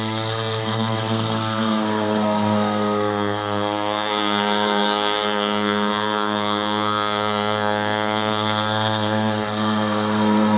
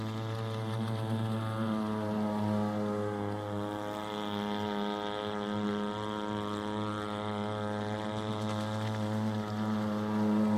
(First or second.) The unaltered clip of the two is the second